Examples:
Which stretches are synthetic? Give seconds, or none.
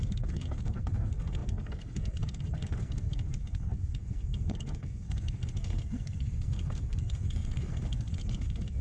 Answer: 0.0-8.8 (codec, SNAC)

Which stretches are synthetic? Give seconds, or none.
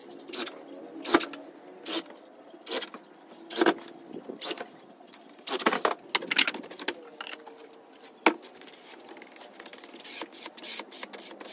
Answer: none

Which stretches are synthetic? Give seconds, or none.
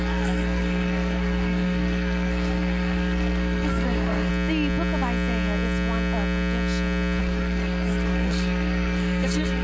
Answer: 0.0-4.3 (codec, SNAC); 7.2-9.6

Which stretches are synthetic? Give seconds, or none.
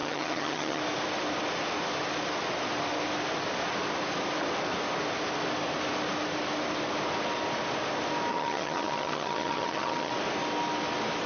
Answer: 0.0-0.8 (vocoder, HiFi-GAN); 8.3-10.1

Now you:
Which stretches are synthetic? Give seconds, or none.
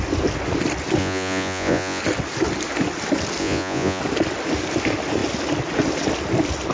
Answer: 1.0-2.0 (vocoder, Vocos); 3.4-4.0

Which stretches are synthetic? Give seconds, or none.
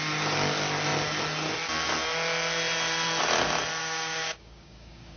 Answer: 3.8-5.2 (codec, DAC)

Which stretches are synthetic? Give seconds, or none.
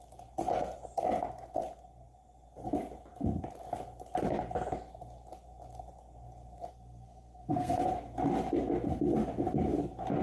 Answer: 6.7-7.8 (codec, SNAC)